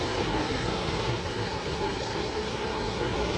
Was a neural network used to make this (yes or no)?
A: yes